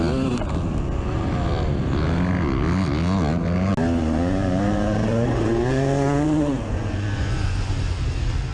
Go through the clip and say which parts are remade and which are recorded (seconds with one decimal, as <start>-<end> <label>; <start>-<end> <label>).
0.0-4.0 recorded; 4.0-7.7 remade; 7.7-8.5 recorded